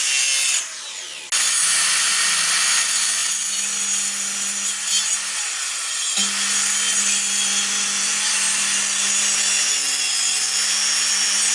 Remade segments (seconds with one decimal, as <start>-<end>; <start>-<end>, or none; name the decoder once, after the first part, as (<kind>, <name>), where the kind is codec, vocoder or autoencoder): none